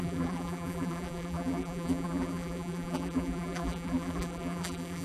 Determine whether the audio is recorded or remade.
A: remade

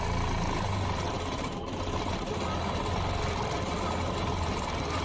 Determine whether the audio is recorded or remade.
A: recorded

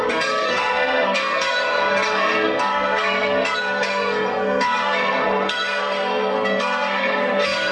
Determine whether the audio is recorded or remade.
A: remade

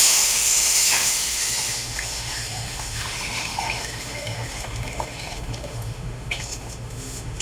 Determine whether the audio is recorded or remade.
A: remade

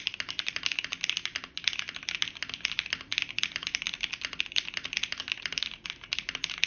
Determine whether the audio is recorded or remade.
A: recorded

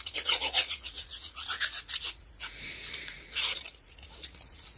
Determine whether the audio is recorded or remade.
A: remade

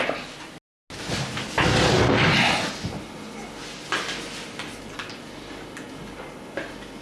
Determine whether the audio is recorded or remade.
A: recorded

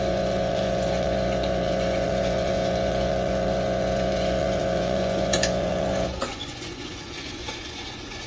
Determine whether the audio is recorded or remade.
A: remade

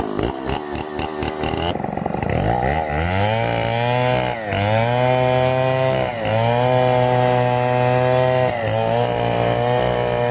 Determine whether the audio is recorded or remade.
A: recorded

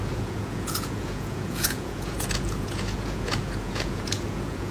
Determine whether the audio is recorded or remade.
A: remade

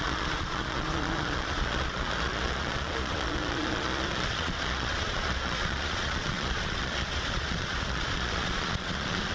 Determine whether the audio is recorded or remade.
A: remade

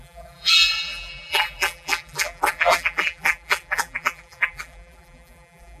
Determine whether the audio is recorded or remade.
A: remade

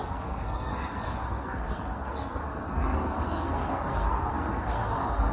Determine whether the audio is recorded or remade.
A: remade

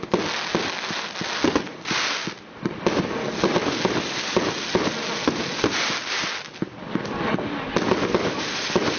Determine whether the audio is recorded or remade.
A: recorded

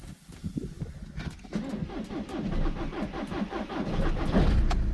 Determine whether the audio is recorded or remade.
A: recorded